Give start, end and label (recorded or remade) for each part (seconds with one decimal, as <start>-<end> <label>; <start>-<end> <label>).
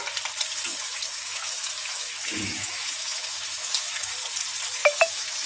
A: 0.0-0.7 recorded; 0.7-4.0 remade; 4.0-4.8 recorded; 4.8-5.5 remade